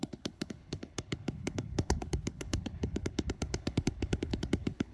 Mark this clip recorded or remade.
remade